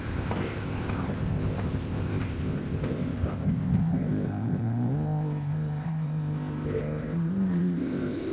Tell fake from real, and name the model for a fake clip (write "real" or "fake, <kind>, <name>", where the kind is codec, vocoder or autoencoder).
fake, codec, ZipCodec